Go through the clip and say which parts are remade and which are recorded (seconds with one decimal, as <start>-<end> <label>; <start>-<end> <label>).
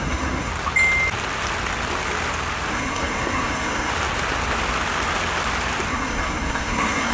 0.0-0.5 remade; 0.5-2.7 recorded; 2.7-3.9 remade; 3.9-5.9 recorded; 5.9-7.1 remade